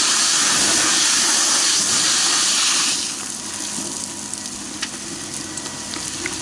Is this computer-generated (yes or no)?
no